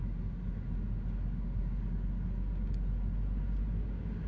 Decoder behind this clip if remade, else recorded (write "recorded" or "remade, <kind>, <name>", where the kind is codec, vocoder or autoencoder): recorded